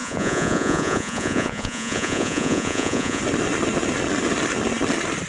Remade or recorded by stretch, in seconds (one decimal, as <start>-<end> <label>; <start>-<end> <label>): 0.0-3.2 remade; 3.2-5.3 recorded